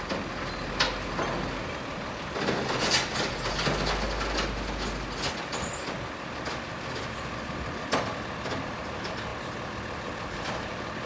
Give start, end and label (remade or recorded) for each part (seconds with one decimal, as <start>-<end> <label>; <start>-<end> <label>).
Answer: 0.0-11.1 recorded

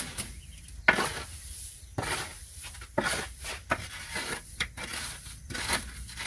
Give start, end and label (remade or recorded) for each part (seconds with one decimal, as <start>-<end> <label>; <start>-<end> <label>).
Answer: 0.0-6.3 recorded

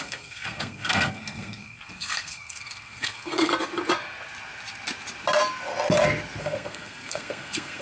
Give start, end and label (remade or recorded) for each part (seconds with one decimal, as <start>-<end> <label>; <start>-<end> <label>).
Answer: 0.0-3.5 remade; 3.5-6.4 recorded; 6.4-7.8 remade

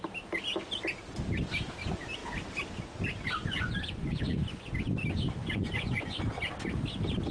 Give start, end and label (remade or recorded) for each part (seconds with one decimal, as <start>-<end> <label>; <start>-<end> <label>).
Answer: 0.0-3.4 recorded; 3.4-4.7 remade; 4.7-5.4 recorded; 5.4-6.2 remade; 6.2-7.3 recorded

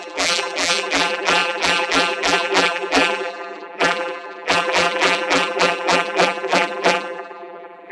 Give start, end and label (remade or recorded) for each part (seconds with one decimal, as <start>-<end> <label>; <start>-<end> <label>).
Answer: 0.0-7.9 remade

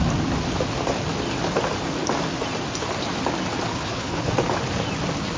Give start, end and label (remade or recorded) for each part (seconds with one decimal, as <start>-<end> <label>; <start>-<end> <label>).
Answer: 0.0-3.7 recorded; 3.7-4.3 remade; 4.3-5.4 recorded